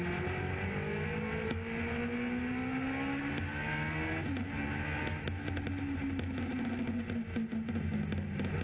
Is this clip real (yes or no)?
yes